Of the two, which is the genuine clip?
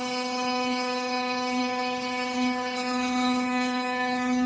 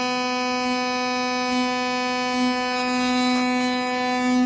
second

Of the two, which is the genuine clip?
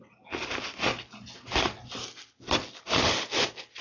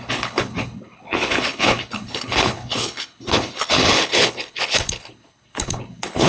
first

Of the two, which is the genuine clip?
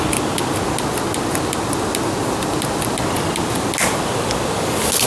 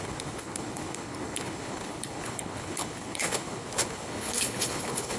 first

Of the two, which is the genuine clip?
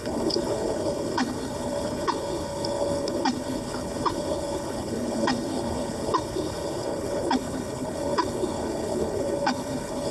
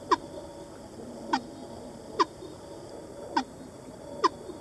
second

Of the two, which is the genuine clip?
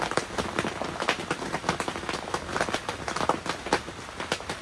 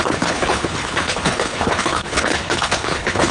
first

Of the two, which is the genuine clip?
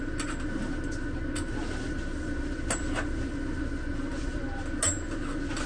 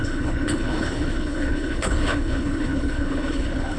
first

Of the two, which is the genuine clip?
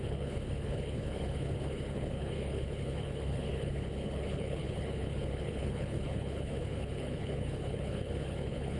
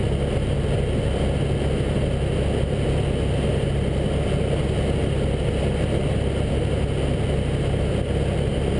second